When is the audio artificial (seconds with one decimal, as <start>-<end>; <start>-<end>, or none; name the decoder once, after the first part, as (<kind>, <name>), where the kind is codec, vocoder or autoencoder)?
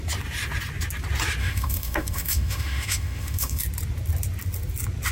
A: 1.4-3.6 (autoencoder, DAC-VAE)